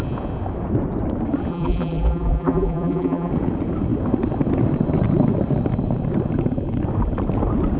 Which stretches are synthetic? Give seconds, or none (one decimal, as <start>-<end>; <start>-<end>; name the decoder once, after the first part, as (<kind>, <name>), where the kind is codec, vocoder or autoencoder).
1.5-3.3 (vocoder, BigVGAN v2)